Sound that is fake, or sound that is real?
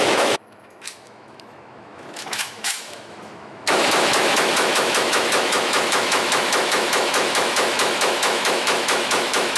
fake